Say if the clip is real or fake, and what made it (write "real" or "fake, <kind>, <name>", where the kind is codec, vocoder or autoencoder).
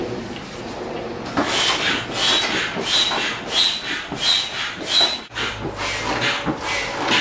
real